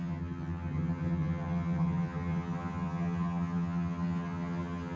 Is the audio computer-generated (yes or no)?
yes